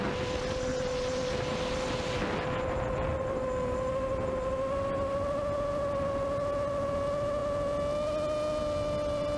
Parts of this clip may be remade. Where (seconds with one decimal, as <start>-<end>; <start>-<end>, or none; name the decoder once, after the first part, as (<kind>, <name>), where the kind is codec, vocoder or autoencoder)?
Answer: none